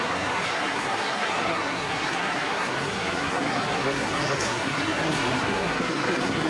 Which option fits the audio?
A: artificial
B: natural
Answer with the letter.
A